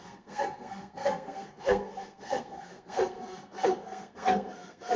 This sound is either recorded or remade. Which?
remade